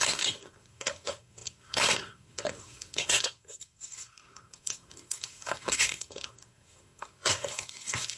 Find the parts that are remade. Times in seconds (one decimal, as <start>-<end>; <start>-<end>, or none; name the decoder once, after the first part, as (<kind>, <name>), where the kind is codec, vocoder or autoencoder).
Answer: 0.0-8.2 (codec, SNAC)